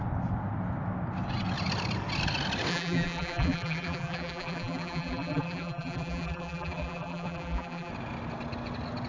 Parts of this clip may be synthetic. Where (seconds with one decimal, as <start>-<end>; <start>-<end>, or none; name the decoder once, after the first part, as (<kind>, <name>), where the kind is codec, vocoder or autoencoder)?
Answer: 2.7-7.9 (vocoder, BigVGAN v2)